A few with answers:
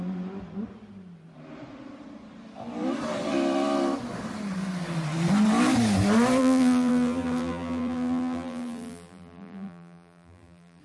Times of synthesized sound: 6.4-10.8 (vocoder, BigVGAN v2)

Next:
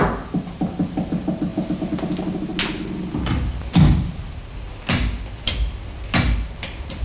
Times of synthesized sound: none

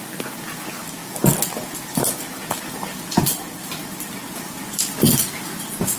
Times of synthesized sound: 3.2-3.7 (vocoder, BigVGAN v2)

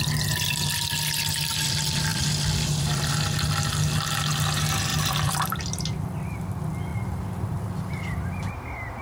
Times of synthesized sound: 2.1-3.1 (vocoder, BigVGAN v2); 4.9-5.6; 6.9-7.6

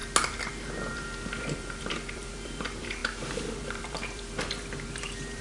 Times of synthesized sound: 0.5-3.0 (vocoder, BigVGAN v2); 3.6-5.4

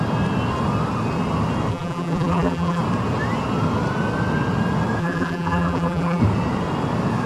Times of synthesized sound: 1.7-2.8 (vocoder, BigVGAN v2); 5.0-6.2